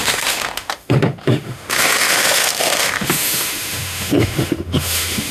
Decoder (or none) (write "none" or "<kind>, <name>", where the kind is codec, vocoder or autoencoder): autoencoder, DAC-VAE